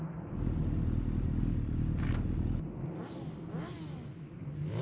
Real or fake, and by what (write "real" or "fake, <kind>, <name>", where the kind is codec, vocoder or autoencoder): real